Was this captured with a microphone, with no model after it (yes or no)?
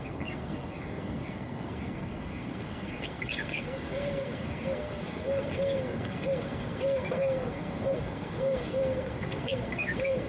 no